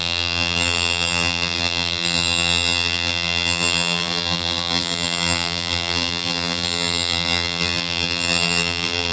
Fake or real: fake